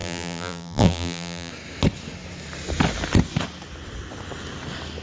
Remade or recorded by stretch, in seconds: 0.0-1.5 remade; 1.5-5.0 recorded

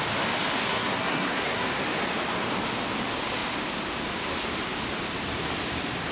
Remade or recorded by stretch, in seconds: 0.0-0.6 recorded; 0.6-1.7 remade; 1.7-6.1 recorded

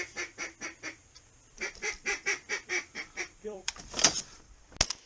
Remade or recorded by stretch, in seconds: 0.0-1.5 recorded; 1.5-4.6 remade; 4.6-5.1 recorded

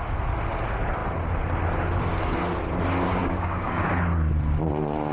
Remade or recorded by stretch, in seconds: 0.0-3.2 recorded; 3.2-3.9 remade; 3.9-5.1 recorded

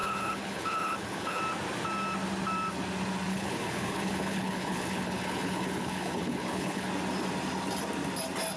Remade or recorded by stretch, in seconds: 0.0-1.4 remade; 1.4-3.3 recorded; 3.3-6.9 remade; 6.9-8.6 recorded

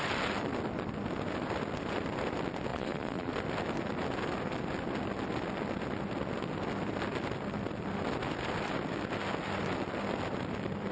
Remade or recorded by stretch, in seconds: 0.0-2.7 recorded; 2.7-3.3 remade; 3.3-10.9 recorded

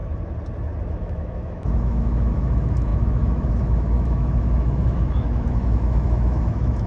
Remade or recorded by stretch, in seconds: 0.0-0.8 recorded; 0.8-6.9 remade

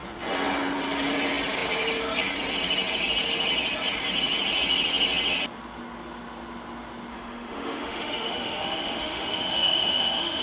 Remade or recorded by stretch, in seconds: 0.0-7.1 recorded; 7.1-10.4 remade